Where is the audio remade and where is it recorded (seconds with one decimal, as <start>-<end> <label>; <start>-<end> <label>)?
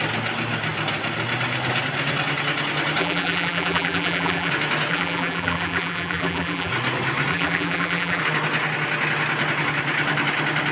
0.0-3.0 recorded; 3.0-4.5 remade; 4.5-4.9 recorded; 4.9-6.7 remade; 6.7-7.3 recorded; 7.3-8.2 remade; 8.2-10.7 recorded